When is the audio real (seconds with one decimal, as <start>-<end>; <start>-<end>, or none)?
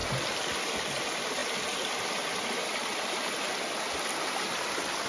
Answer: 0.0-5.1